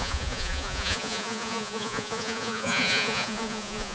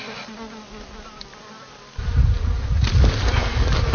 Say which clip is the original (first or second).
second